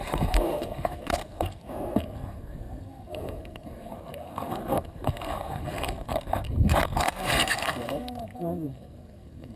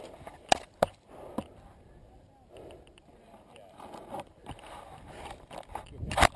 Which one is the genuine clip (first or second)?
second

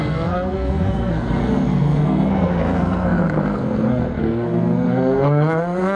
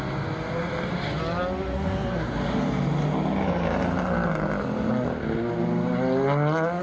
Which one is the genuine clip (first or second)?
second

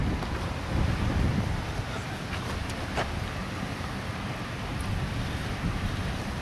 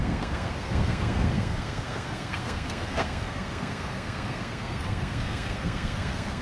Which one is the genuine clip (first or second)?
first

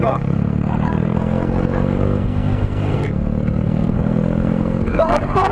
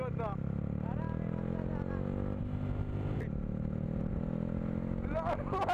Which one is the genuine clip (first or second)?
second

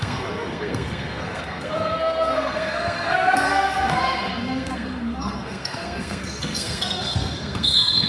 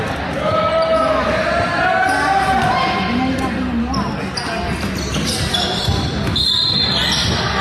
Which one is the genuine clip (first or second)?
second